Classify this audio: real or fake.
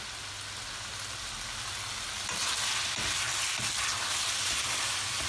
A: real